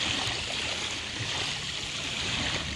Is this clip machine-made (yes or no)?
no